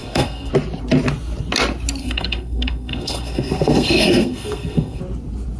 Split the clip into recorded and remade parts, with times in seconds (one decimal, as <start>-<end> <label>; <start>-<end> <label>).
0.0-0.5 remade; 0.5-2.0 recorded; 2.0-5.0 remade; 5.0-5.6 recorded